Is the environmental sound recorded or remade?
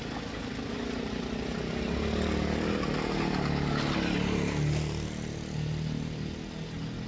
recorded